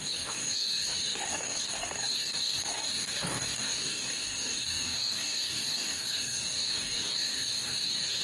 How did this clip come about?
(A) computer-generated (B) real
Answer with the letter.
A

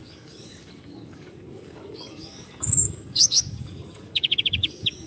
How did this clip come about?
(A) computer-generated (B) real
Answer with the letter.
A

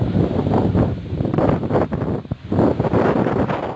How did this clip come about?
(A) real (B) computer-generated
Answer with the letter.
A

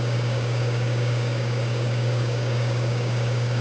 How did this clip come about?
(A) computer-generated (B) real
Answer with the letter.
A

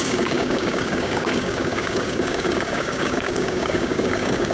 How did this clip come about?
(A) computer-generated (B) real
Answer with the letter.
A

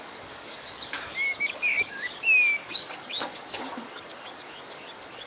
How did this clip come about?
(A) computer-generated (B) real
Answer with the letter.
A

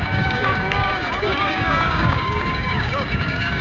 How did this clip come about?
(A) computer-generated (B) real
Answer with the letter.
A